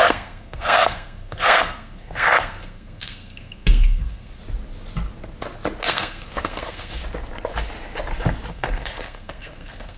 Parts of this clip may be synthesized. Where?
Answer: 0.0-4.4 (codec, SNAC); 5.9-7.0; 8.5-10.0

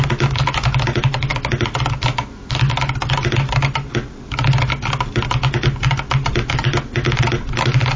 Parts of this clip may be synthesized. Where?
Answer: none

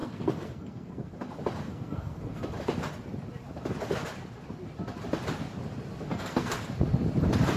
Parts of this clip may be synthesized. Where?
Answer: 0.0-1.1 (codec, SNAC); 1.7-2.4; 6.1-6.6

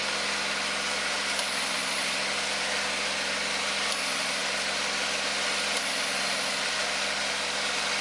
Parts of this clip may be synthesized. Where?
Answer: none